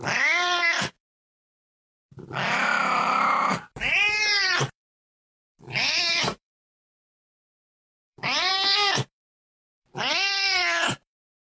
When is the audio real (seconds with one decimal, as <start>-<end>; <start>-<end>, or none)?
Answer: 8.5-9.1